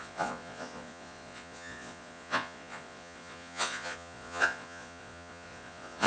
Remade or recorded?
remade